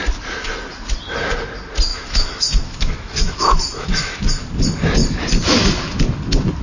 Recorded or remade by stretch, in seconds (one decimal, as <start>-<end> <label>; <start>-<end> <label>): 0.0-1.9 recorded; 1.9-4.2 remade; 4.2-6.6 recorded